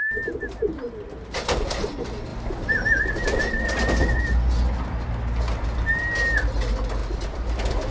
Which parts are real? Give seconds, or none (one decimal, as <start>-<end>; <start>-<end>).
0.0-7.9